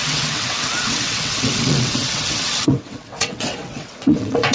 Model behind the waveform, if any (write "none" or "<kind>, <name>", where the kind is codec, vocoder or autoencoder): vocoder, WaveNeXt